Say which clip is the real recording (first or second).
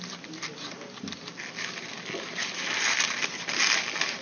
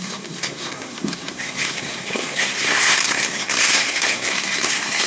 first